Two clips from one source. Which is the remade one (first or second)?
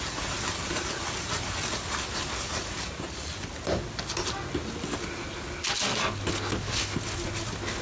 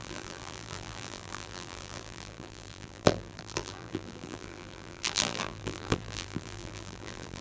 second